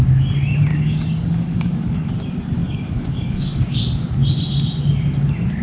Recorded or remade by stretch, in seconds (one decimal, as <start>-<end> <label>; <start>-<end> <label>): 0.0-0.7 recorded; 0.7-2.1 remade; 2.1-2.6 recorded; 2.6-3.8 remade; 3.8-5.6 recorded

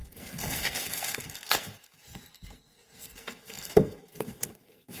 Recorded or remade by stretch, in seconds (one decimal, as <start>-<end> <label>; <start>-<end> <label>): 0.0-5.0 remade

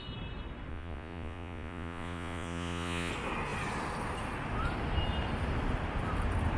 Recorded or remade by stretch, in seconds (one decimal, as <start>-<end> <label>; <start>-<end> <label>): 0.0-0.7 recorded; 0.7-3.1 remade; 3.1-6.6 recorded

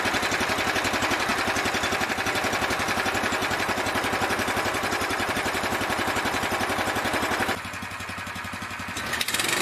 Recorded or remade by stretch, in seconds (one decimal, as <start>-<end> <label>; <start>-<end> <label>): 0.0-9.6 recorded